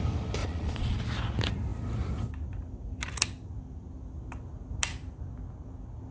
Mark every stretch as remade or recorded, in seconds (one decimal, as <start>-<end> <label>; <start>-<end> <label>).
0.0-0.4 recorded; 0.4-1.0 remade; 1.0-6.1 recorded